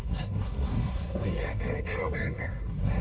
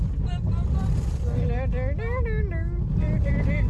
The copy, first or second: first